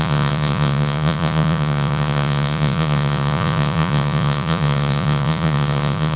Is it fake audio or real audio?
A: fake